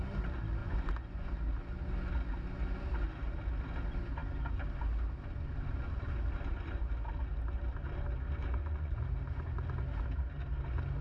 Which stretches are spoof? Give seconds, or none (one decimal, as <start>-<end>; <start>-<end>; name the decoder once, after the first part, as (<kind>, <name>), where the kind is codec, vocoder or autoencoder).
0.6-1.3 (vocoder, Vocos); 8.4-9.0